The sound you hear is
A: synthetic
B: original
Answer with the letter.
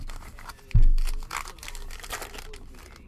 B